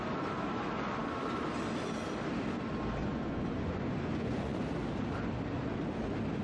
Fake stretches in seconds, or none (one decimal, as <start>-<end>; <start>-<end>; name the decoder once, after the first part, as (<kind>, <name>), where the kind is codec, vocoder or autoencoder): 3.0-4.6 (vocoder, Vocos)

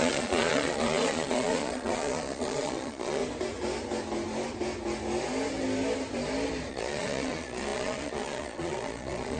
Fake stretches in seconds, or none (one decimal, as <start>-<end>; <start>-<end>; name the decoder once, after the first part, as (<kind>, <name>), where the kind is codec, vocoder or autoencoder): 0.0-3.2 (vocoder, Vocos); 6.7-9.4

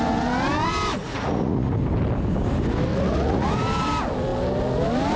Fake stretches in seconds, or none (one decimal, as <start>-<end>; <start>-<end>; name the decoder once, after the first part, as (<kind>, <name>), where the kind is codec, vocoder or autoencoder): 0.9-1.8 (vocoder, Vocos); 2.9-3.5

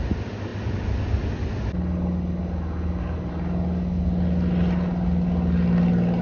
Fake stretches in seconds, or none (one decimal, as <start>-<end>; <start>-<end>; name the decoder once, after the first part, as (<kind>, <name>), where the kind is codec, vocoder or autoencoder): none

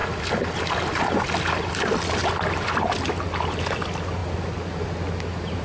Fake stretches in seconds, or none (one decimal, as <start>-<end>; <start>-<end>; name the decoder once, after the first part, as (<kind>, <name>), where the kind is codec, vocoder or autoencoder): none

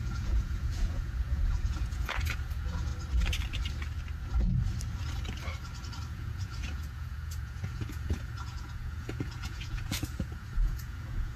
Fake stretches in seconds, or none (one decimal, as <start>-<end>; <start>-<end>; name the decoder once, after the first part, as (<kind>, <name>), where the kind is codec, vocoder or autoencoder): 0.0-2.9 (vocoder, Vocos); 6.1-11.4

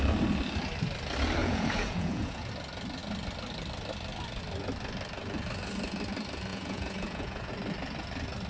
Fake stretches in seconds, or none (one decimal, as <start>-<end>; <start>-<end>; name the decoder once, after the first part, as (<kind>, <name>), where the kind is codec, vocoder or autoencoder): 1.4-2.5 (vocoder, Vocos); 6.5-7.5